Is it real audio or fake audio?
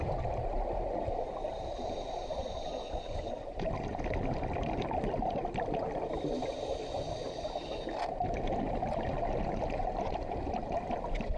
real